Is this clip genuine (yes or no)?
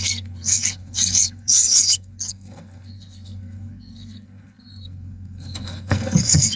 no